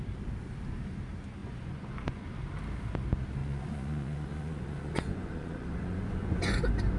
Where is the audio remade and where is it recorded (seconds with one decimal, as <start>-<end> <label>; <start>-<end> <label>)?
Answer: 0.0-1.4 recorded; 1.4-2.2 remade; 2.2-3.4 recorded; 3.4-6.6 remade; 6.6-7.0 recorded

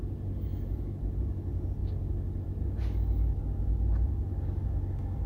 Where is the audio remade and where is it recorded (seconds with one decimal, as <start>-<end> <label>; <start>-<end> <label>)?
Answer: 0.0-5.3 recorded